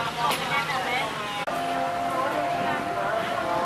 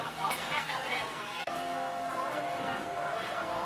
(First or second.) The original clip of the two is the first